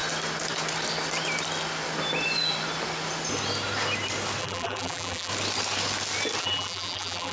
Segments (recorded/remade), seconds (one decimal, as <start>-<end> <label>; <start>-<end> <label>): 0.0-4.4 recorded; 4.4-5.3 remade; 5.3-6.4 recorded; 6.4-7.3 remade